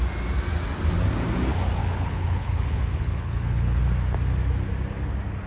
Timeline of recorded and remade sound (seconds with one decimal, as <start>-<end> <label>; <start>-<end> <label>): 0.0-1.8 recorded; 1.8-3.8 remade; 3.8-5.5 recorded